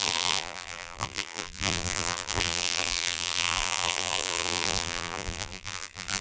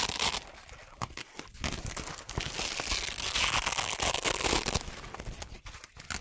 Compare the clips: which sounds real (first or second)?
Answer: second